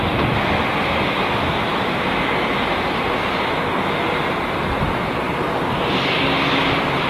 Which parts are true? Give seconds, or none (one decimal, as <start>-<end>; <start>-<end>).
0.0-7.1